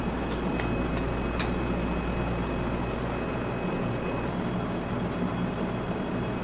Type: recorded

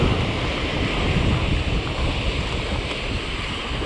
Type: recorded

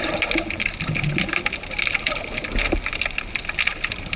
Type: recorded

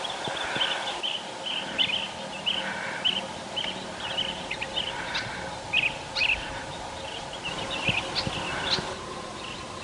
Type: recorded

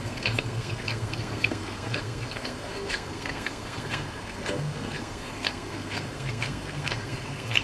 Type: remade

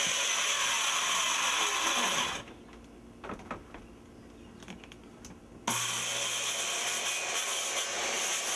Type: recorded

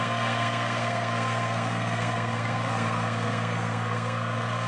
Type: remade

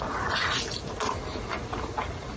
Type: recorded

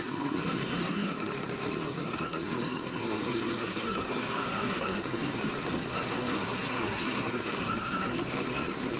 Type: remade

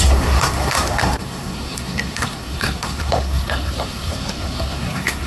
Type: remade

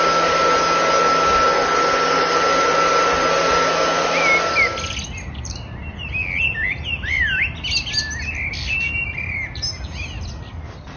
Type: recorded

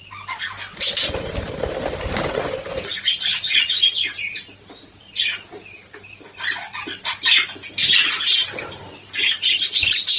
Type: recorded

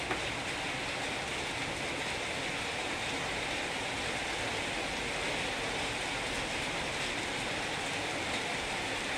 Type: recorded